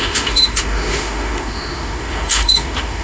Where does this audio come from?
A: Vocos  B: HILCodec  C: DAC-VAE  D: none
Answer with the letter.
C